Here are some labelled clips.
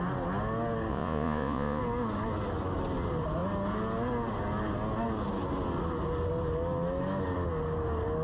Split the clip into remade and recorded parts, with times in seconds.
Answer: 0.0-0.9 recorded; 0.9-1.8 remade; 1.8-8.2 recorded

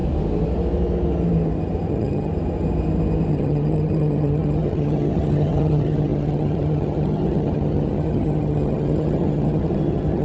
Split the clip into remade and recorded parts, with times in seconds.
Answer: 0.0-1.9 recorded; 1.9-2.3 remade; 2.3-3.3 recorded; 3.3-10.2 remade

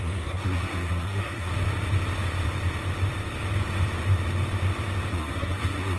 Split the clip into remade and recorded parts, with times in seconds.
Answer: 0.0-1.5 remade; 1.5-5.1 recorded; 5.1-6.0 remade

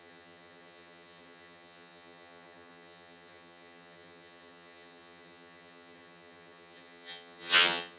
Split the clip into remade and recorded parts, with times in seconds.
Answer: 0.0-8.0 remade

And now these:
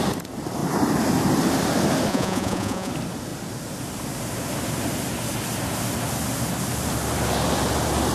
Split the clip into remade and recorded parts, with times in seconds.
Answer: 0.0-2.1 recorded; 2.1-2.9 remade; 2.9-8.1 recorded

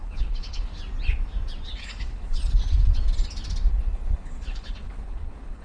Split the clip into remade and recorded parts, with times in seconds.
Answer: 0.0-0.7 remade; 0.7-1.8 recorded; 1.8-2.4 remade; 2.4-3.7 recorded; 3.7-5.6 remade

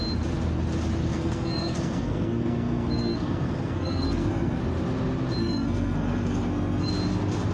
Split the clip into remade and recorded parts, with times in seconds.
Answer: 0.0-1.1 recorded; 1.1-4.6 remade; 4.6-5.4 recorded; 5.4-6.9 remade; 6.9-7.5 recorded